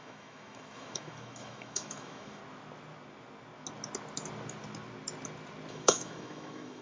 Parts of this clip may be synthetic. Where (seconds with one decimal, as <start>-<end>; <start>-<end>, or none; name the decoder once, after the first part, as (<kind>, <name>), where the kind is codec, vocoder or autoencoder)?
0.0-2.4 (autoencoder, DAC-VAE); 5.7-6.8